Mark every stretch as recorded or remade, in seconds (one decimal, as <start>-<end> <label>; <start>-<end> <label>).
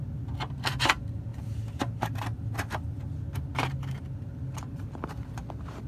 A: 0.0-1.3 recorded; 1.3-2.2 remade; 2.2-3.5 recorded; 3.5-4.0 remade; 4.0-5.9 recorded